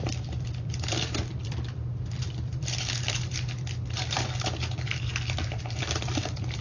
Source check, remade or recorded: remade